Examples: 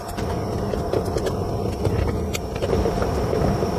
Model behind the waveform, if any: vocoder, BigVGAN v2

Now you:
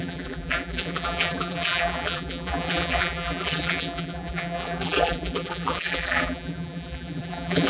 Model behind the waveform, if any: vocoder, BigVGAN v2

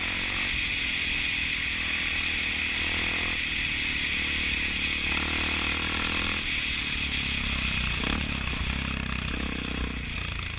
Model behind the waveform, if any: none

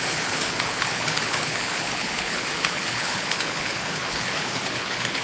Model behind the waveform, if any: codec, HILCodec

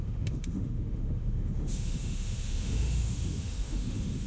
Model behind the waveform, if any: autoencoder, DAC-VAE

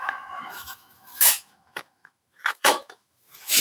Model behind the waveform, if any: autoencoder, DAC-VAE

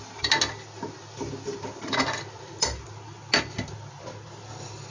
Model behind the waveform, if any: none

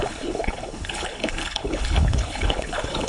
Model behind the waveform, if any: codec, HILCodec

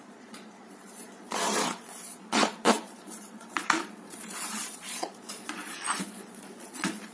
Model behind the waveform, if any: vocoder, Vocos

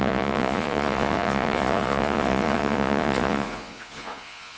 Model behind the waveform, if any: vocoder, Vocos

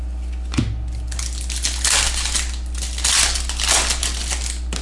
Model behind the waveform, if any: none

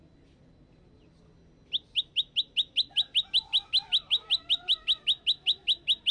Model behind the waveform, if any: none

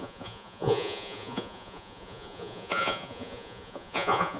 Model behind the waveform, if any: vocoder, Vocos